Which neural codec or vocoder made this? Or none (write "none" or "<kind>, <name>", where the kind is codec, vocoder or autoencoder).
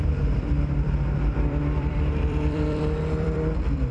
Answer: vocoder, BigVGAN v2